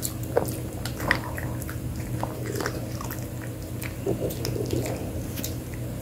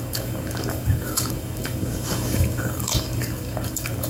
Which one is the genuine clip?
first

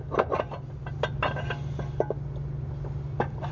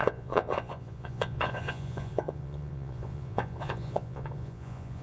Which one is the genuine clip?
first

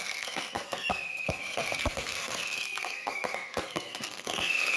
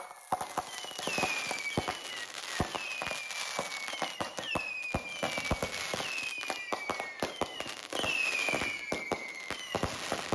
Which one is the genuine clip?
second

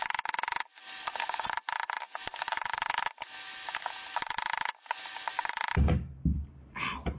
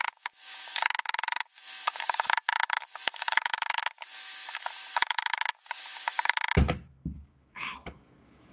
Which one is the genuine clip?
first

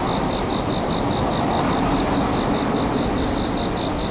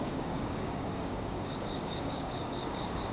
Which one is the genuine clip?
first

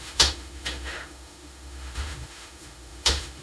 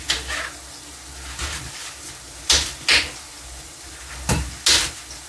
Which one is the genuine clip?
second